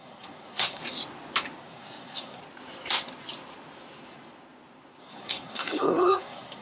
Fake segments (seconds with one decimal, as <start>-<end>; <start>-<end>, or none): 0.0-0.8; 1.6-2.4; 5.0-6.6